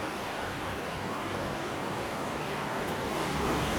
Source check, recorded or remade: remade